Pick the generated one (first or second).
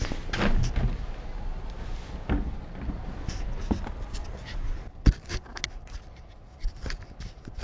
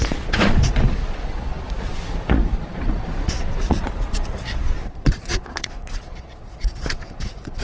second